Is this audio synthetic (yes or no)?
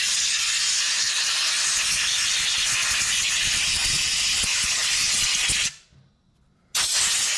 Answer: no